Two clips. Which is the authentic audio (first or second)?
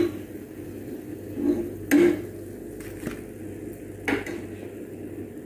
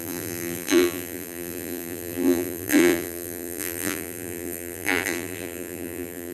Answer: first